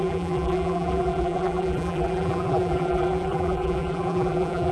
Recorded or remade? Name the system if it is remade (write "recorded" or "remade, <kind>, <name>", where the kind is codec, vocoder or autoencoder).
remade, vocoder, BigVGAN v2